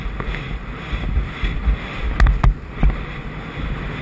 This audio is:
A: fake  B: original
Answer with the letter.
B